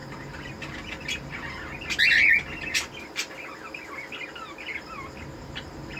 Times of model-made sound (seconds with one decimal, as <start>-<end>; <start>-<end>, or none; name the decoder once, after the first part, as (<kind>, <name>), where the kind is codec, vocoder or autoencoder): none